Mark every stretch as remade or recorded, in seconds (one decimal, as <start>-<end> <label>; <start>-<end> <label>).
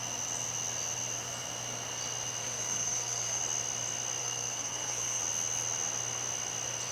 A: 0.0-2.4 recorded; 2.4-3.4 remade; 3.4-4.2 recorded; 4.2-5.2 remade; 5.2-6.9 recorded